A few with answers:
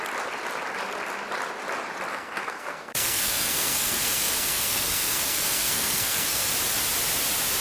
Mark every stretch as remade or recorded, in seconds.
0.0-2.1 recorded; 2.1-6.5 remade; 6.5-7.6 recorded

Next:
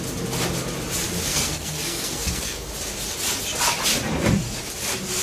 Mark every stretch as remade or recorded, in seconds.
0.0-1.3 recorded; 1.3-2.7 remade; 2.7-5.2 recorded

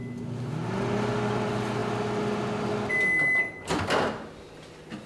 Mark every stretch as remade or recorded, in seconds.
0.0-5.1 recorded

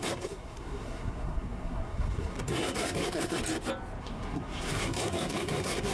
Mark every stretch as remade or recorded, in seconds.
0.0-3.4 remade; 3.4-4.0 recorded; 4.0-5.9 remade

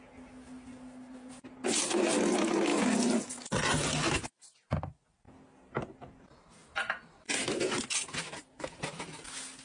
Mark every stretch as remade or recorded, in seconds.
0.0-9.6 recorded

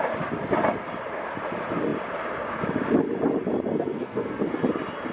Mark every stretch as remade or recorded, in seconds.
0.0-3.7 recorded; 3.7-4.6 remade; 4.6-5.1 recorded